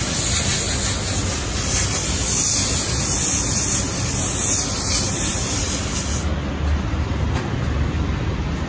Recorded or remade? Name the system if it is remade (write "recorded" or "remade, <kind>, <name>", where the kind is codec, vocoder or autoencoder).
recorded